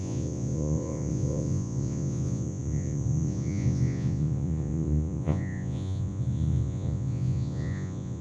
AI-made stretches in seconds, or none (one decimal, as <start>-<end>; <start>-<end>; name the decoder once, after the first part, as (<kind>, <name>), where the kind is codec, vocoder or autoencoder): 0.0-8.2 (vocoder, Vocos)